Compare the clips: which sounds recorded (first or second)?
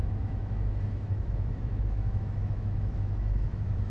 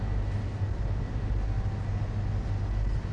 second